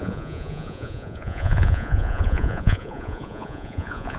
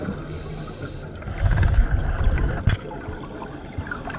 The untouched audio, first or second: second